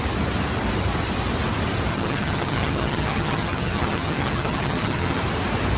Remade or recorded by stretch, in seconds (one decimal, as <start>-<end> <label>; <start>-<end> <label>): 0.0-1.9 recorded; 1.9-5.2 remade; 5.2-5.8 recorded